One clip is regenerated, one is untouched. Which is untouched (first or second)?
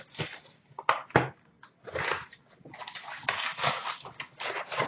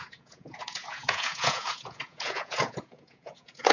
first